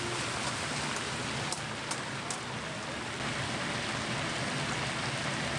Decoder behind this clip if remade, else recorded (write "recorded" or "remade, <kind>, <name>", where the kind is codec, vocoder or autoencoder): recorded